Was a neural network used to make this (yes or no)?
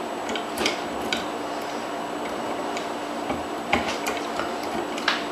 yes